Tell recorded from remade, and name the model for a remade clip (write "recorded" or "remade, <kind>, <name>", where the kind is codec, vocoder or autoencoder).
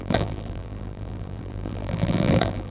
remade, vocoder, BigVGAN v2